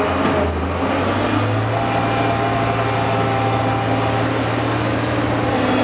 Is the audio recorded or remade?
recorded